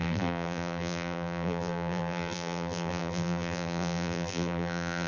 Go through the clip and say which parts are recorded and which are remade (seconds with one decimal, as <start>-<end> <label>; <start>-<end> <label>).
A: 0.0-5.1 remade